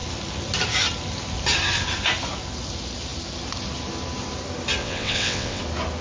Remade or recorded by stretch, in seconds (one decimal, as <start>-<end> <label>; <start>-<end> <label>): 0.0-4.8 recorded; 4.8-5.6 remade; 5.6-6.0 recorded